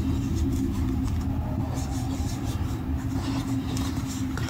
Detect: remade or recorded recorded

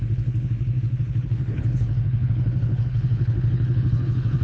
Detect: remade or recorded remade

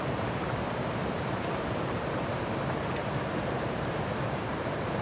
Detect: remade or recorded remade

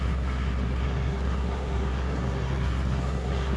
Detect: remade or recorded remade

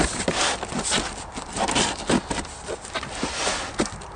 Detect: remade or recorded recorded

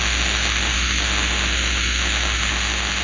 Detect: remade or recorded remade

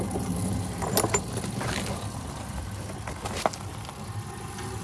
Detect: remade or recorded recorded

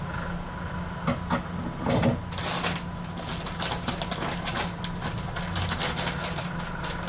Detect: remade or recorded recorded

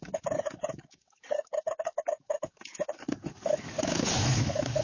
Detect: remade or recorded remade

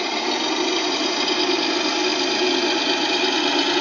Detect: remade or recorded recorded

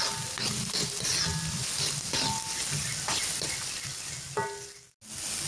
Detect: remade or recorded recorded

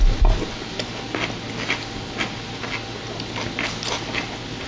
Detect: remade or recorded recorded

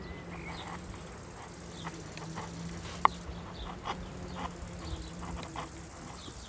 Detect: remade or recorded recorded